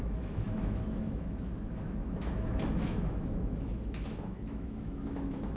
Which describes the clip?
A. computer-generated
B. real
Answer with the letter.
A